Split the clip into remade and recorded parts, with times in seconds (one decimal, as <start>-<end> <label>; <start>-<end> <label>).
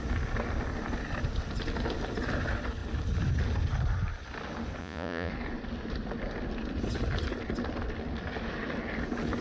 0.0-4.8 recorded; 4.8-5.3 remade; 5.3-9.4 recorded